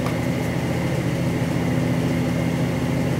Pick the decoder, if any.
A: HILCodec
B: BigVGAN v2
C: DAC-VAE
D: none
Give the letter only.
D